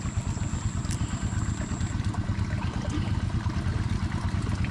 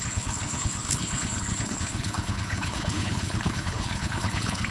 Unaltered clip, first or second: first